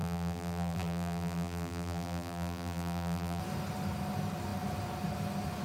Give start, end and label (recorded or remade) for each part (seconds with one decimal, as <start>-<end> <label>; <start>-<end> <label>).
0.0-3.4 remade; 3.4-5.6 recorded

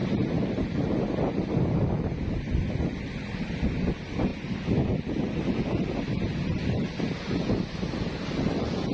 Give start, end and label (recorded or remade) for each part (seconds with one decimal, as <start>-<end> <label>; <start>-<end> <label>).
0.0-8.9 recorded

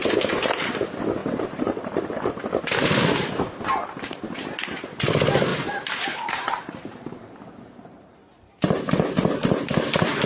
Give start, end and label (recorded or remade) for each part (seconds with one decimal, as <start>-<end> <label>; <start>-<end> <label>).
0.0-1.2 recorded; 1.2-2.7 remade; 2.7-5.5 recorded; 5.5-8.1 remade; 8.1-10.3 recorded